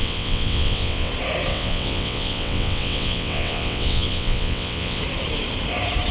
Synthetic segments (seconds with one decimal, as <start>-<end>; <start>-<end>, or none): 0.0-1.1; 1.5-5.0